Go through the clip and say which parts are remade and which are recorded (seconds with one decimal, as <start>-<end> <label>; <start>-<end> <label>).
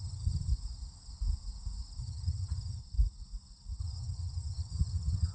0.0-0.5 remade; 0.5-2.0 recorded; 2.0-2.8 remade; 2.8-3.8 recorded; 3.8-5.3 remade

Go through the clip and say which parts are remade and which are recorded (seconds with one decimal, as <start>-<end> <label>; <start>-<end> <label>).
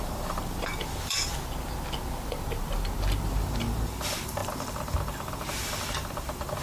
0.0-1.3 remade; 1.3-3.3 recorded; 3.3-6.6 remade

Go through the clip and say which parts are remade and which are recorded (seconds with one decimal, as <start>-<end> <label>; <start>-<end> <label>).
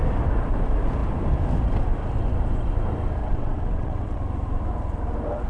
0.0-3.2 recorded; 3.2-4.2 remade; 4.2-5.5 recorded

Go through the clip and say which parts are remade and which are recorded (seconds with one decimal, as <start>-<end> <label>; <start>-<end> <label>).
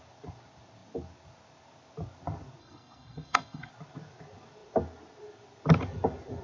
0.0-2.6 recorded; 2.6-3.7 remade; 3.7-6.4 recorded